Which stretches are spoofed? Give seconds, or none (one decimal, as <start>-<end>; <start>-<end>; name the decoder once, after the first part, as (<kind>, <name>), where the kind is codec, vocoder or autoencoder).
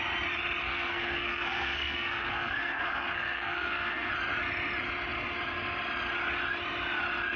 0.6-4.1 (codec, SNAC)